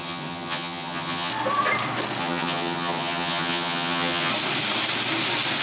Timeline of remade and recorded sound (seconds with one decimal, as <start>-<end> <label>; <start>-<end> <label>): 0.0-1.3 remade; 1.3-2.2 recorded; 2.2-4.3 remade; 4.3-5.6 recorded